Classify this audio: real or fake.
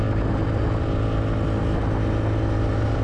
real